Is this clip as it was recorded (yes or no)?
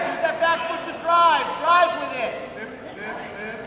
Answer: yes